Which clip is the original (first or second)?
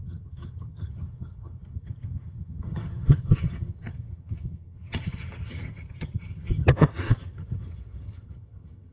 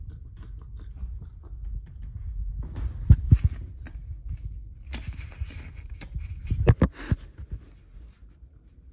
second